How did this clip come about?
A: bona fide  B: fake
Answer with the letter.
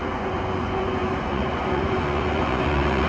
B